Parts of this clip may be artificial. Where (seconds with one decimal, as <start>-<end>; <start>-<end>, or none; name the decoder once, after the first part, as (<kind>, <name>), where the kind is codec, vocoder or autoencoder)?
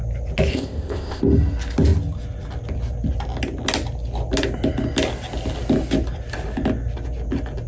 0.5-1.2 (codec, ZipCodec)